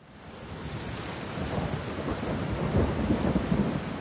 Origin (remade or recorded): recorded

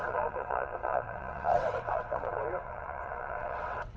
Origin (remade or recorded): remade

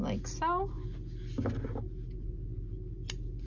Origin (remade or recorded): recorded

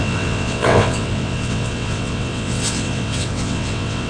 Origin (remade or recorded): remade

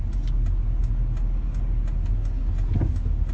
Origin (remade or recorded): recorded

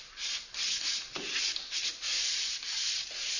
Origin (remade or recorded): recorded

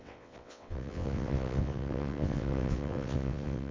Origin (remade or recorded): remade